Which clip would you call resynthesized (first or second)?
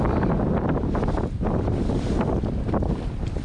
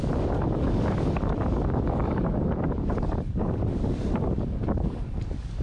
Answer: second